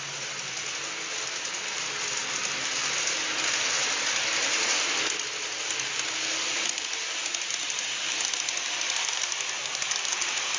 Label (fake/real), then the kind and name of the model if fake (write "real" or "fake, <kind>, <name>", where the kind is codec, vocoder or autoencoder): real